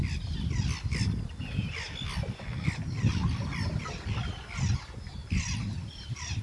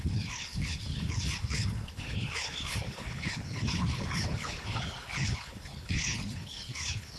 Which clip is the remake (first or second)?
second